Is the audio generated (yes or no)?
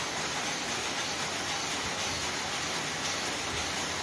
no